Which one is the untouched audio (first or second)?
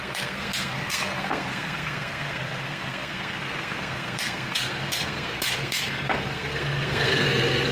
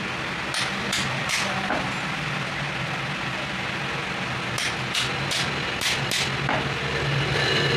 second